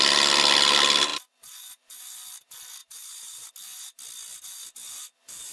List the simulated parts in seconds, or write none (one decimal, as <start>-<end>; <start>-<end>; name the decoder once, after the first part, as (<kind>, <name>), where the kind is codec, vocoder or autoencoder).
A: 2.8-3.5 (vocoder, BigVGAN v2)